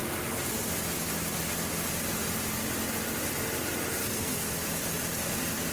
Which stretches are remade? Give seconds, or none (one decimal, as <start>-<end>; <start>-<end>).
4.0-4.5